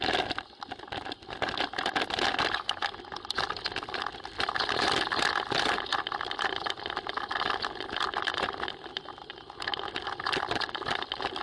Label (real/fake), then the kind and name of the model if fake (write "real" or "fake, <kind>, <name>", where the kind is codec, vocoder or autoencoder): real